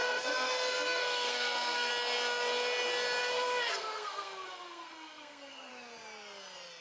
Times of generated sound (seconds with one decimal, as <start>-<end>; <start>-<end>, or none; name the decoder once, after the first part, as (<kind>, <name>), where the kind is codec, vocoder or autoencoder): 0.0-1.9 (codec, SNAC); 3.2-5.7

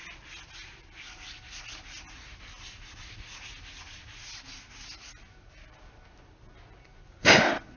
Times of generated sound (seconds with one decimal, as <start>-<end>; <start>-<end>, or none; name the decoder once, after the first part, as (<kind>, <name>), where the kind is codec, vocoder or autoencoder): none

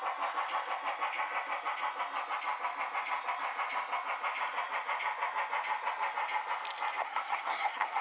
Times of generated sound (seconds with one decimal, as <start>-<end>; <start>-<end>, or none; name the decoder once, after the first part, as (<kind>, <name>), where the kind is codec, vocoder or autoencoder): 7.0-8.0 (codec, SNAC)

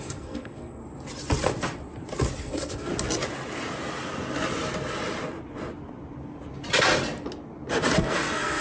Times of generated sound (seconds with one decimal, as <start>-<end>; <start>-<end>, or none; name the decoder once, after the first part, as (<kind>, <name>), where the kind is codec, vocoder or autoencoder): 0.0-0.8 (codec, SNAC); 2.4-2.9; 8.0-8.6

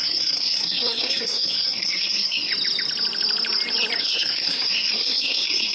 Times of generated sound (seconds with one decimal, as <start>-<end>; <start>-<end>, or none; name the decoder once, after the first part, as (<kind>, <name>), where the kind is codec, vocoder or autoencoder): 0.0-2.5 (codec, SNAC); 4.0-5.7